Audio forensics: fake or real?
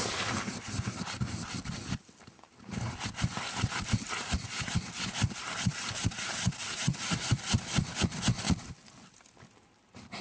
real